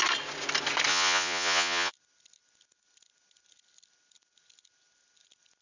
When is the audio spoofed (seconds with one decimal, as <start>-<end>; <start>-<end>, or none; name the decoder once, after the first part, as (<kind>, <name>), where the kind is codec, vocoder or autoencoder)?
0.9-1.9 (vocoder, Vocos)